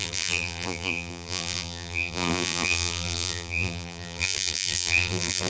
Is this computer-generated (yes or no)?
yes